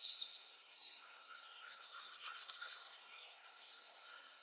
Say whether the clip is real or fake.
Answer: fake